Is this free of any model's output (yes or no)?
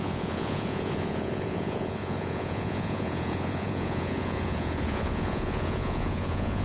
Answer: no